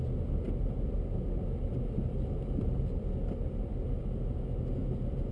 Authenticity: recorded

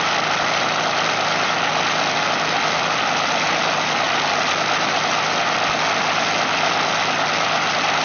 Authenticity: recorded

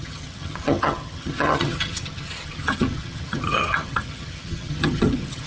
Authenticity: remade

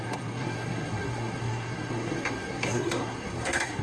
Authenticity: remade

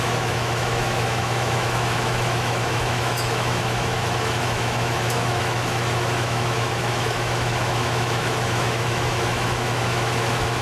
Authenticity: remade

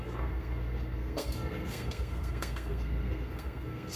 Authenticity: remade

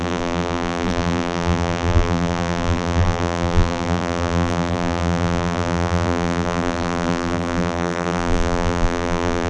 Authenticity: remade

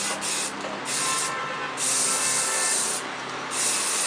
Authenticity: recorded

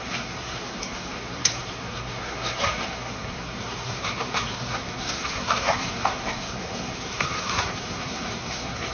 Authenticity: remade